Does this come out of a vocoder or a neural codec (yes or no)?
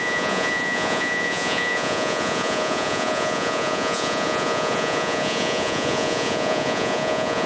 yes